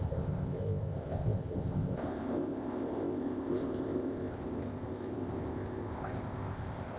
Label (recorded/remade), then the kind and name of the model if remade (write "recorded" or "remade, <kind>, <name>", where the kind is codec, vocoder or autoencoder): remade, codec, ZipCodec